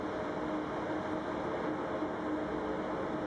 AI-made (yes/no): no